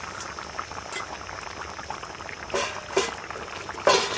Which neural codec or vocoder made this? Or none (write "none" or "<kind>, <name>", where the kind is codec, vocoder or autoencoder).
none